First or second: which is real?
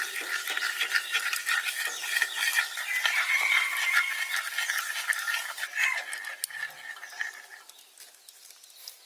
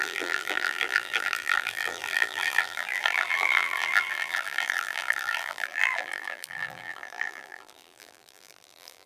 first